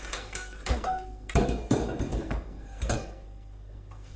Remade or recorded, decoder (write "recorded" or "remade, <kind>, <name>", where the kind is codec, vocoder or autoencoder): remade, codec, SNAC